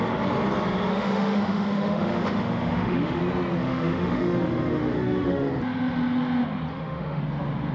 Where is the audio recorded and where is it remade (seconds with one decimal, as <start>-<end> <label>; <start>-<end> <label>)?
0.0-0.9 recorded; 0.9-3.2 remade; 3.2-3.6 recorded; 3.6-5.5 remade; 5.5-6.7 recorded; 6.7-7.2 remade; 7.2-7.7 recorded

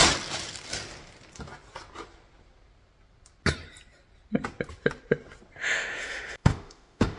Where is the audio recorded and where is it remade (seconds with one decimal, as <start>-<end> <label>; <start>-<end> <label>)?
0.0-5.6 recorded; 5.6-7.2 remade